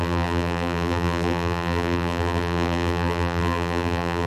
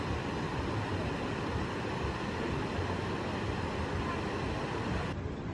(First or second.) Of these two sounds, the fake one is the first